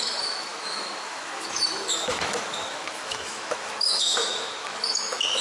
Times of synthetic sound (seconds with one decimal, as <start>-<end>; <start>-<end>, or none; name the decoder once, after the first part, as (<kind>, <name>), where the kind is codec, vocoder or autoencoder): 0.0-5.4 (autoencoder, DAC-VAE)